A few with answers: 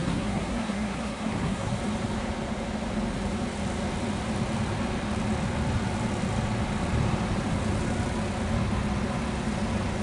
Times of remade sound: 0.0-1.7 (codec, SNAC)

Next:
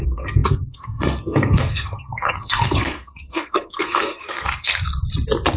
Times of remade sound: 0.0-4.7 (codec, SNAC)

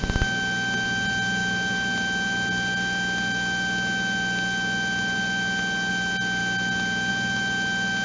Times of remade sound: none

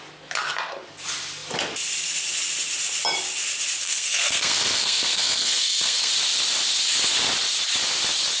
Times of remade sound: 3.8-6.1 (codec, SNAC)

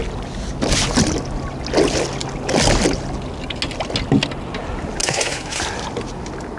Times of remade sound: 5.0-5.6 (codec, SNAC)

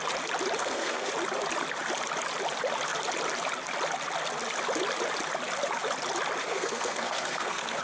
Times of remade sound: 0.6-1.1 (codec, SNAC); 6.4-7.8